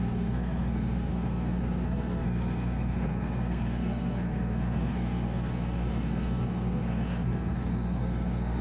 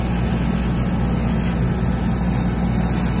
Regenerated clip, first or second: first